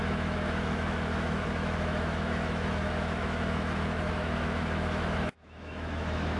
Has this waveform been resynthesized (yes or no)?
yes